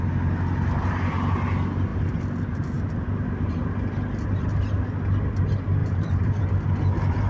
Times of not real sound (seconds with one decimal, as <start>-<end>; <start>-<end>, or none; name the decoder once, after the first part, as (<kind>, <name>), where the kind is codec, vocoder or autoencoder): 5.8-6.4 (vocoder, BigVGAN v2)